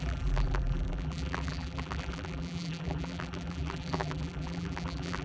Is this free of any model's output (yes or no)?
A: no